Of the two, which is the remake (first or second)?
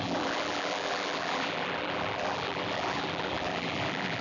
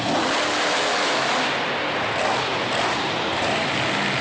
first